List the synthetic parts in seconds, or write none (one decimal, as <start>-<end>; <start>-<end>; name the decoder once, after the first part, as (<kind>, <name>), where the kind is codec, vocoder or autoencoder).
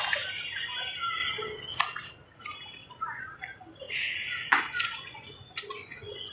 2.8-3.3 (vocoder, Vocos); 4.4-6.3